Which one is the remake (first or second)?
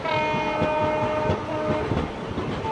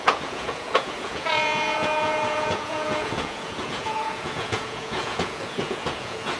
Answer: second